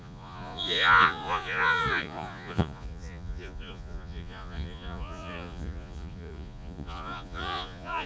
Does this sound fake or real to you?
fake